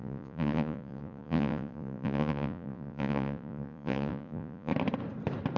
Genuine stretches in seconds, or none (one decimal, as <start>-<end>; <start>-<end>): 4.7-5.6